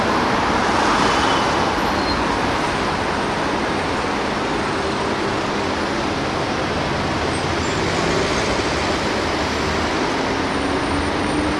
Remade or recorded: recorded